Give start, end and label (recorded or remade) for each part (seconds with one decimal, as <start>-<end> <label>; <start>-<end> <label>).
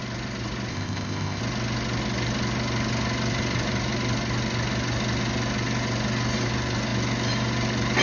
0.0-0.7 recorded; 0.7-1.4 remade; 1.4-8.0 recorded